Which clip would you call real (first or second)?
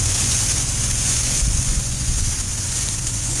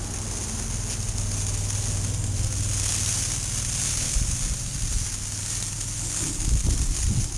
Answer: second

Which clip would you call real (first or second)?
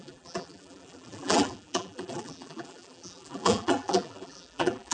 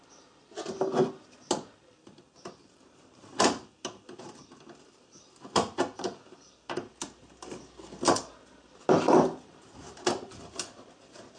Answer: second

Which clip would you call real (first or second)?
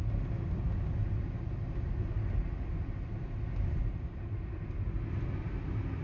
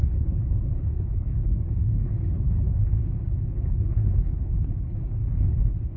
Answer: first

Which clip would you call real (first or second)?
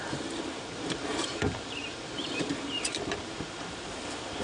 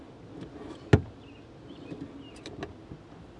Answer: second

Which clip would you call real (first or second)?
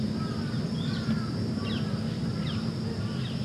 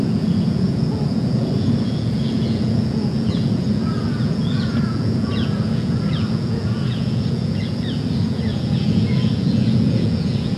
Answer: first